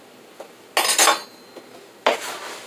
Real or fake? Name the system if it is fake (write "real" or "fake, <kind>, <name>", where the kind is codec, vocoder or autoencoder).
real